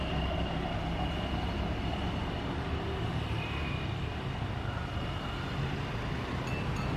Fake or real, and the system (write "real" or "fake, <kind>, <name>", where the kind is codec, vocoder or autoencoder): real